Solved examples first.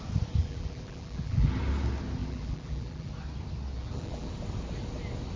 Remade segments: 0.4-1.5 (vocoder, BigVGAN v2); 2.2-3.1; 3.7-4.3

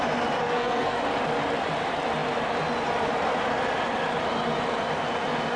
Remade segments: 0.4-1.0 (codec, SNAC)

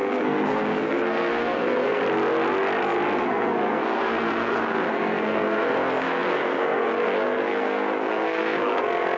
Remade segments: 0.0-2.0 (codec, SNAC); 3.2-9.2

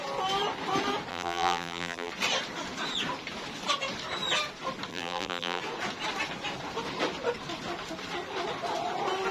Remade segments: 1.1-2.1 (vocoder, BigVGAN v2); 4.9-5.6

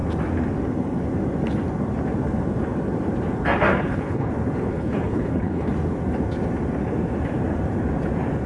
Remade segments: 3.7-4.3 (codec, HILCodec); 4.7-5.7

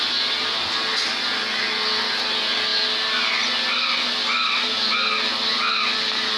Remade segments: none